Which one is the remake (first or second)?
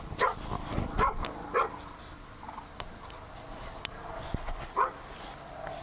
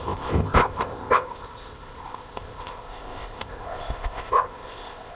second